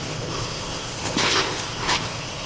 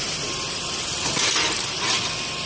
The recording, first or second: second